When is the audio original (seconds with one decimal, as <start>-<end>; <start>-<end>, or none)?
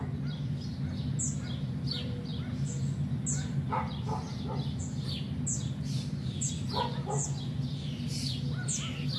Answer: 0.0-9.2